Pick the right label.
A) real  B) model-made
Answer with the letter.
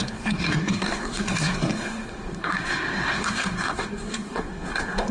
B